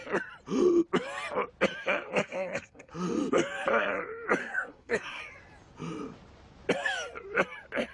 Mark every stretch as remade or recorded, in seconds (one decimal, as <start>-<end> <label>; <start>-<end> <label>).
0.0-2.2 recorded; 2.2-2.9 remade; 2.9-4.4 recorded; 4.4-5.2 remade; 5.2-7.9 recorded